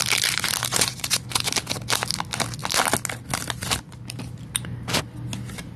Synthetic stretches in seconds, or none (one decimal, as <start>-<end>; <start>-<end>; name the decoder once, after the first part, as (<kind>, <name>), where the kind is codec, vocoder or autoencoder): 0.7-1.5 (vocoder, Vocos)